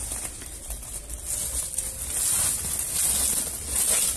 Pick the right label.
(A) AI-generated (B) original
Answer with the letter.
B